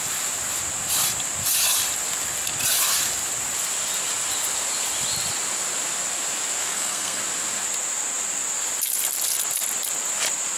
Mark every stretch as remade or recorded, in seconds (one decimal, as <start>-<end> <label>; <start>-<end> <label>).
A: 0.0-6.6 recorded; 6.6-7.2 remade; 7.2-10.6 recorded